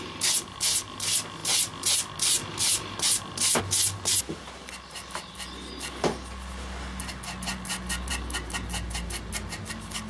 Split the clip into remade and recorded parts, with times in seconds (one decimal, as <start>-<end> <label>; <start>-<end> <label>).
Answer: 0.0-10.1 recorded